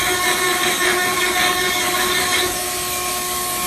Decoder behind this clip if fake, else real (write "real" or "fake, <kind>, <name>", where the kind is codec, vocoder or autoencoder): fake, codec, DAC